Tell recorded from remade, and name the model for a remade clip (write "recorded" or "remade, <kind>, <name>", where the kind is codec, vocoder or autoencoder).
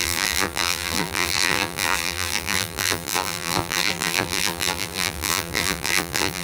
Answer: remade, vocoder, BigVGAN v2